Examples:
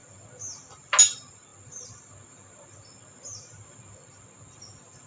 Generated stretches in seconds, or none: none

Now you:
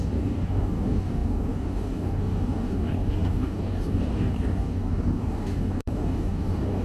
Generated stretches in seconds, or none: 0.0-6.8 (codec, DAC)